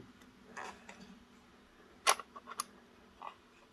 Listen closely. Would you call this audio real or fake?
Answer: real